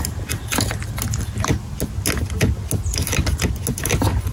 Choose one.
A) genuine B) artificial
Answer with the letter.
A